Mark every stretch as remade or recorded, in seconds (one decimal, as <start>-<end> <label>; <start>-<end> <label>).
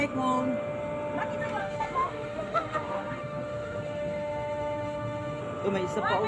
0.0-1.6 recorded; 1.6-5.4 remade; 5.4-6.3 recorded